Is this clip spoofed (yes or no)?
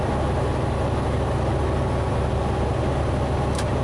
no